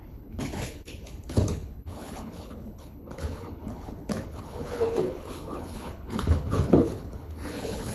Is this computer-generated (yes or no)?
yes